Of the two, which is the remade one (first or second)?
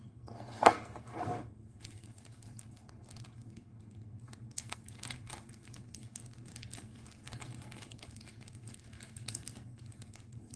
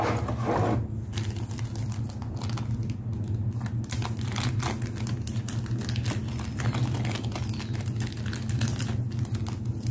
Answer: first